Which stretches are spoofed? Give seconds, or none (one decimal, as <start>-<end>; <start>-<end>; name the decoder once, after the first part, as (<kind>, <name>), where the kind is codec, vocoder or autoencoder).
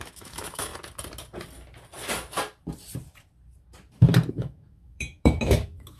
0.0-0.7 (autoencoder, DAC-VAE); 4.3-6.0